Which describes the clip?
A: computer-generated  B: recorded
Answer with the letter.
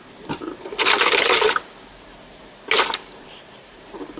B